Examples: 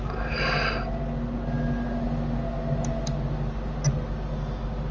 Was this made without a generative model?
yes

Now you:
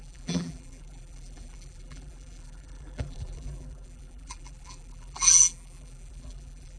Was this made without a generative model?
no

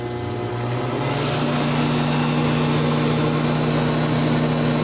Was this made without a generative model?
yes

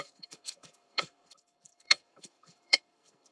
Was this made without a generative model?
no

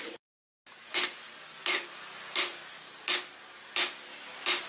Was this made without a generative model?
yes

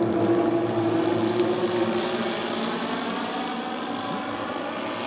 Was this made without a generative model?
yes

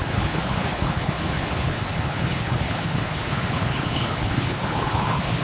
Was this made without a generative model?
no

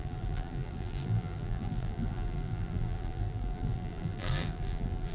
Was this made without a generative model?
no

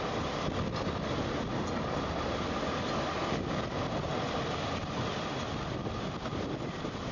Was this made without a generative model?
yes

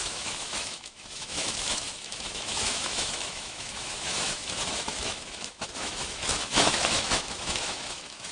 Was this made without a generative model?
no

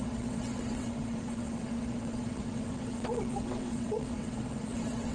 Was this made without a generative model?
no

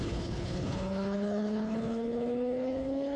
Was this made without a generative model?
no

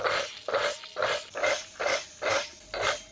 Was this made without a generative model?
yes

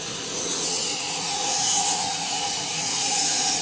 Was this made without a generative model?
no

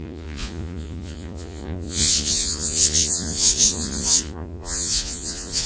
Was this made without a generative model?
no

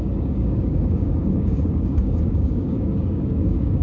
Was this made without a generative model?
no